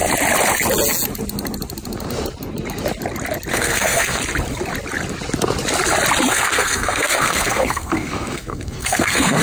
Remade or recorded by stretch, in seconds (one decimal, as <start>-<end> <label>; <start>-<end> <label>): 0.0-3.5 recorded; 3.5-4.2 remade; 4.2-6.3 recorded; 6.3-9.4 remade